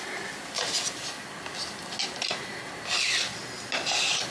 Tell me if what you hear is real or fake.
real